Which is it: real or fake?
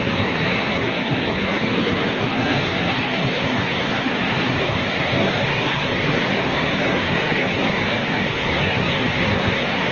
fake